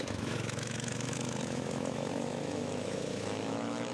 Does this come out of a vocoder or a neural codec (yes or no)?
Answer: yes